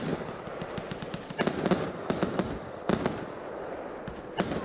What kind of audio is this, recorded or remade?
recorded